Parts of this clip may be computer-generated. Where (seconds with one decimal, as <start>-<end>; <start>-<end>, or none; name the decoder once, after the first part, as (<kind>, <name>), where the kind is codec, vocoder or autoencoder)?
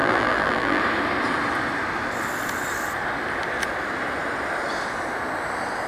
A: 0.0-0.8 (vocoder, BigVGAN v2)